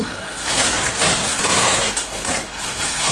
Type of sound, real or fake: fake